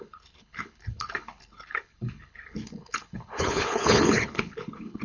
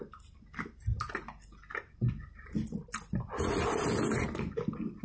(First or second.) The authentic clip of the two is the second